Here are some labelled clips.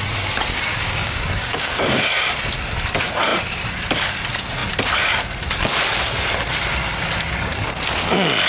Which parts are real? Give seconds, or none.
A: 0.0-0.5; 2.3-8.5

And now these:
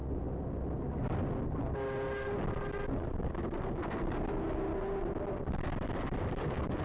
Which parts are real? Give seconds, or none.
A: 0.0-6.8

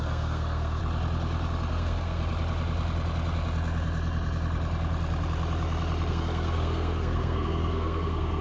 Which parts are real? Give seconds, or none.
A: 0.8-1.7; 2.2-6.1

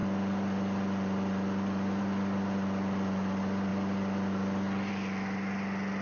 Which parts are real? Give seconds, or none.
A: 2.0-6.0

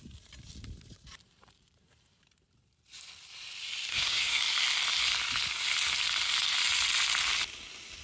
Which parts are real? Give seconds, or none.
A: 0.0-3.9; 4.4-8.0

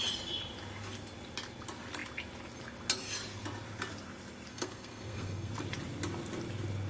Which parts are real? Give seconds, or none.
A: 0.0-4.5; 5.5-6.9

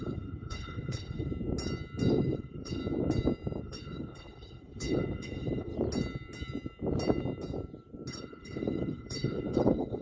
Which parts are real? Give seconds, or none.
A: 1.3-2.1; 2.8-3.6; 5.7-8.1

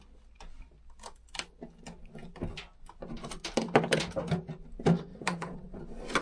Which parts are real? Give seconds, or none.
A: 0.0-5.1; 5.8-6.2